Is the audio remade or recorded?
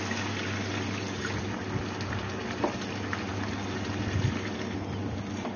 recorded